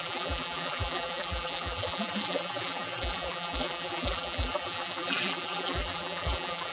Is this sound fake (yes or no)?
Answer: yes